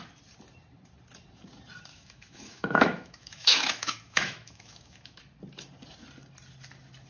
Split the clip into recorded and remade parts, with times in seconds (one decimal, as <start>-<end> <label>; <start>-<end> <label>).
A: 0.0-1.9 recorded; 1.9-5.2 remade; 5.2-7.1 recorded